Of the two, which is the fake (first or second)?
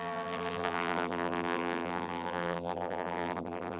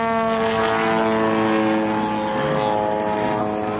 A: first